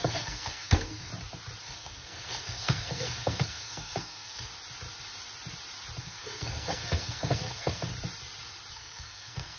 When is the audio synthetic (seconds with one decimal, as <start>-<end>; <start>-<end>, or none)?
0.0-1.1; 1.6-4.5; 6.0-7.9; 8.7-9.6